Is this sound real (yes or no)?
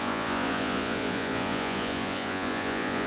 no